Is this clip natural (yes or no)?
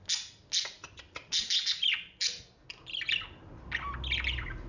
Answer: yes